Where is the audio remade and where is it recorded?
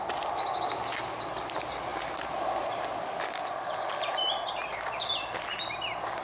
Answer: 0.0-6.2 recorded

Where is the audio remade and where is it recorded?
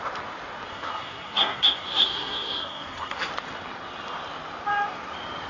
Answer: 0.0-0.7 recorded; 0.7-3.3 remade; 3.3-5.5 recorded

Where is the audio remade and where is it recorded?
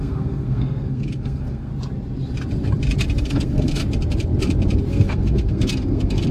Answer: 0.0-1.7 remade; 1.7-3.2 recorded; 3.2-3.8 remade; 3.8-4.9 recorded; 4.9-6.3 remade